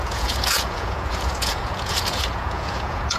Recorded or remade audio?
remade